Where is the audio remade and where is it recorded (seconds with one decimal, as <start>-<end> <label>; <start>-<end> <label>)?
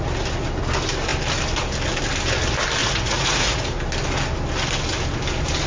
0.0-2.8 recorded; 2.8-3.8 remade; 3.8-5.7 recorded